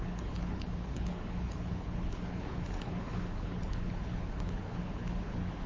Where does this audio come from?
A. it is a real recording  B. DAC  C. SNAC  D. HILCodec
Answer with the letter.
D